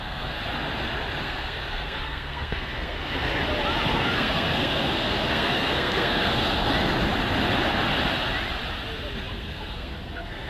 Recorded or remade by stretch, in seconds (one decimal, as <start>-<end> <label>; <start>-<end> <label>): 0.0-0.4 remade; 0.4-1.2 recorded; 1.2-3.3 remade; 3.3-3.9 recorded; 3.9-6.5 remade; 6.5-9.3 recorded; 9.3-10.5 remade